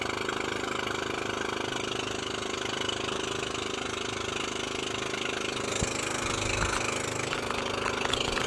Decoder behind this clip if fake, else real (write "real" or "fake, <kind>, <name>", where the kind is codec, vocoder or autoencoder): real